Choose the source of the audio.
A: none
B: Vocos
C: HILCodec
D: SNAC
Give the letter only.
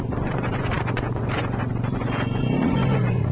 B